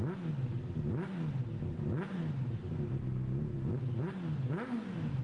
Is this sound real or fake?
real